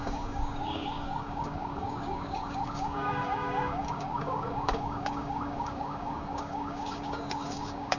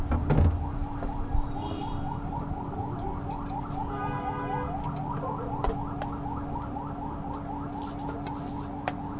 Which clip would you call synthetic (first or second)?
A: first